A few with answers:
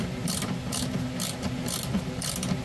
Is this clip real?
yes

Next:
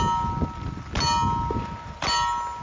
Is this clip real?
yes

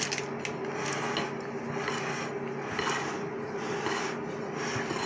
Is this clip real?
yes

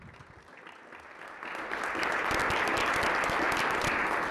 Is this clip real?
yes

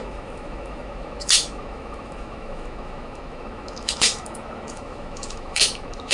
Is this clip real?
no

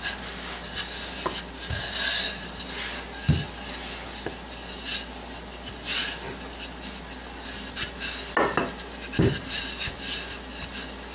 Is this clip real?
yes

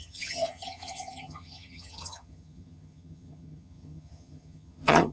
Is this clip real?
no